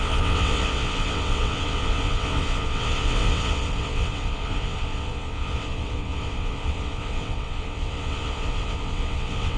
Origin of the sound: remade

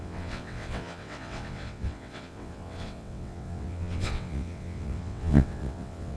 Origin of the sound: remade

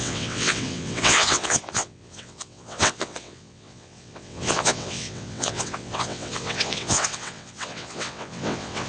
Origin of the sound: remade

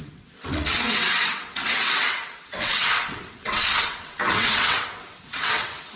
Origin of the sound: remade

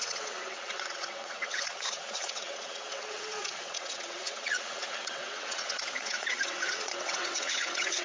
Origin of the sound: remade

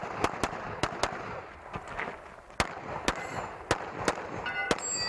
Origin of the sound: recorded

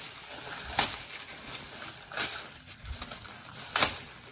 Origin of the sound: recorded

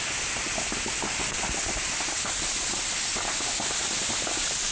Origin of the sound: recorded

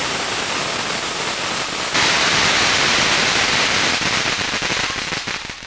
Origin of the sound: recorded